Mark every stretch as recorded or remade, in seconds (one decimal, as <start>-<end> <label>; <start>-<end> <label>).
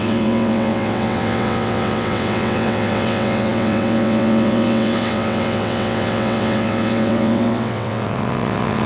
0.0-8.9 remade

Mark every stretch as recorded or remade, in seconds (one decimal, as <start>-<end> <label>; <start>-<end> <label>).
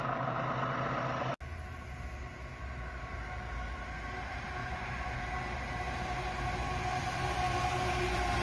0.0-4.6 recorded; 4.6-5.2 remade; 5.2-8.4 recorded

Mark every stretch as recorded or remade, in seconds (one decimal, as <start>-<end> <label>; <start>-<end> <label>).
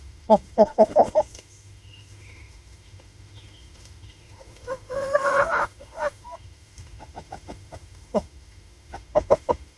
0.0-9.8 remade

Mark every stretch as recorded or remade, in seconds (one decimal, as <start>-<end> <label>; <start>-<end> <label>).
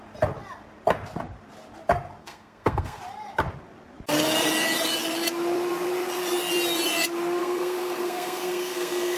0.0-2.2 recorded; 2.2-3.0 remade; 3.0-7.4 recorded; 7.4-9.2 remade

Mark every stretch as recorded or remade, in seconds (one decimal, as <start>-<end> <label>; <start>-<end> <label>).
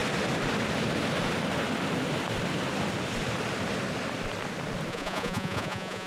0.0-4.9 recorded; 4.9-6.1 remade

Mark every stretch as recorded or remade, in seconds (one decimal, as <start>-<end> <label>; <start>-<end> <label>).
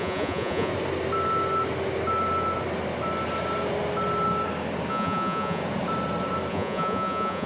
0.0-0.7 remade; 0.7-4.9 recorded; 4.9-5.6 remade; 5.6-6.5 recorded; 6.5-7.5 remade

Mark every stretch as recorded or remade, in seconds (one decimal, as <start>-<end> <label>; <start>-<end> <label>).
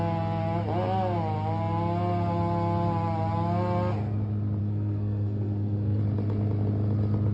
0.0-4.6 recorded; 4.6-6.0 remade; 6.0-7.3 recorded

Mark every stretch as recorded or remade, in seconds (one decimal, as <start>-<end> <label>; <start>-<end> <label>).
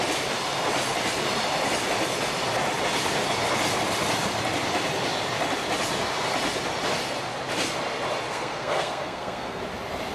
0.0-8.3 recorded; 8.3-9.6 remade; 9.6-10.1 recorded